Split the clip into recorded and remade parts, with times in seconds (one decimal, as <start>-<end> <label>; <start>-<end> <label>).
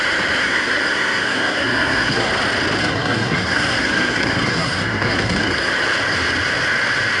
0.0-0.4 recorded; 0.4-2.3 remade; 2.3-2.8 recorded; 2.8-5.7 remade; 5.7-7.2 recorded